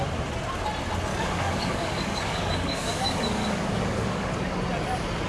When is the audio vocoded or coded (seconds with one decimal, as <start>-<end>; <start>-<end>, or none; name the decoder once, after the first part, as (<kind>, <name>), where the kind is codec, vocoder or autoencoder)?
1.1-4.3 (codec, DAC)